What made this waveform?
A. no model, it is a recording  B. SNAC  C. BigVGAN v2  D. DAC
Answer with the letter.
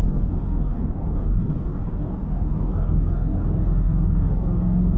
D